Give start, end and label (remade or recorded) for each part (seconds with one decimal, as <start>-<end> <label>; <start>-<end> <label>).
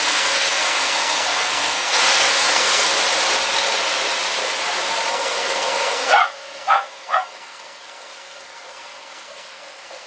0.0-2.9 remade; 2.9-5.1 recorded; 5.1-10.1 remade